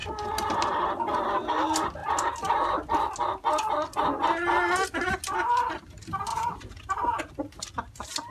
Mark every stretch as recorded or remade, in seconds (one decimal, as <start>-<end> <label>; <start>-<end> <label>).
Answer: 0.0-6.3 recorded; 6.3-7.3 remade; 7.3-8.3 recorded